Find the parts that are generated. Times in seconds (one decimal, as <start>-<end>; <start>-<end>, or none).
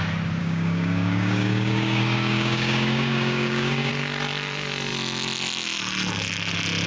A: 0.4-3.9